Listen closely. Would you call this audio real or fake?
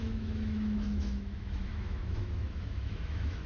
fake